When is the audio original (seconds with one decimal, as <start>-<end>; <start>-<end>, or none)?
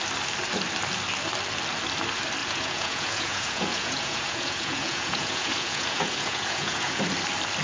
0.0-2.4; 7.0-7.6